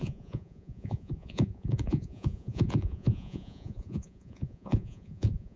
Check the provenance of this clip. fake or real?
fake